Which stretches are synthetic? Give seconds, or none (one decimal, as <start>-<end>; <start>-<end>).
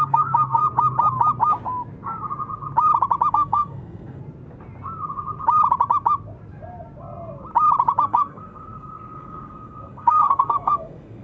0.0-0.6; 3.3-4.2; 8.0-11.2